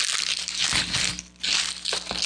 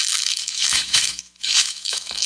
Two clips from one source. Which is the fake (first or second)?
second